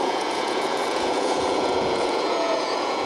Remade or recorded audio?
remade